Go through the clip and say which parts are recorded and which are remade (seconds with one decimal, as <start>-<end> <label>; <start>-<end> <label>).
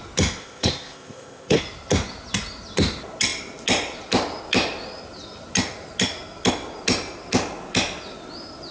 0.0-0.4 recorded; 0.4-1.6 remade; 1.6-8.7 recorded